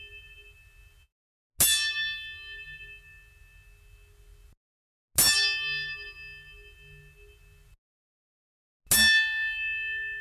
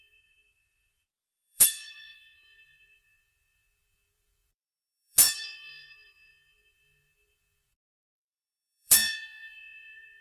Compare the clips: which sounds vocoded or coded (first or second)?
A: second